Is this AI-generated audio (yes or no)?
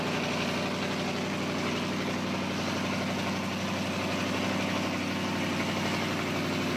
no